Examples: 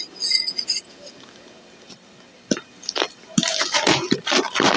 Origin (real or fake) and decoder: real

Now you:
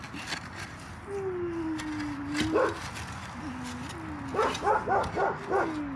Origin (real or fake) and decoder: real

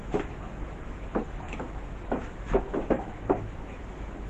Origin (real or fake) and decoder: fake, autoencoder, DAC-VAE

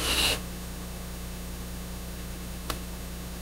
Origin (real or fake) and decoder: fake, autoencoder, DAC-VAE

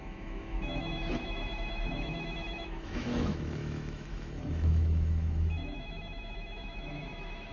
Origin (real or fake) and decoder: fake, autoencoder, DAC-VAE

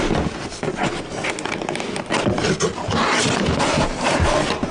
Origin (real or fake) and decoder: real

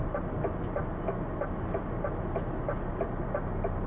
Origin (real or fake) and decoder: real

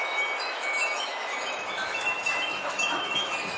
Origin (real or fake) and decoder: fake, autoencoder, DAC-VAE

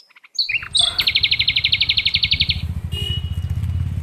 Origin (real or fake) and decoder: real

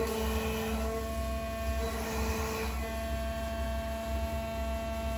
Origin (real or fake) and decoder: real